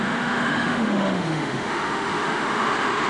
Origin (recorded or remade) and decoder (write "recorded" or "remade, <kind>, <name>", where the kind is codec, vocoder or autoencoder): remade, autoencoder, DAC-VAE